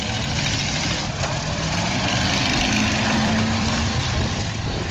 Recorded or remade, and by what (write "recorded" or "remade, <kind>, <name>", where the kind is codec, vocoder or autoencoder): remade, vocoder, BigVGAN v2